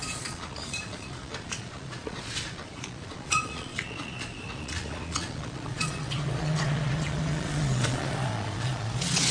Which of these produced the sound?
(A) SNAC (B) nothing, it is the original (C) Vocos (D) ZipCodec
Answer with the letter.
C